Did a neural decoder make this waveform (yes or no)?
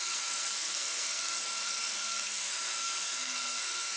yes